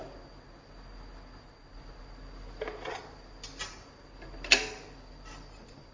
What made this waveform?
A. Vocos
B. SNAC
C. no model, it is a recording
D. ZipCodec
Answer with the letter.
C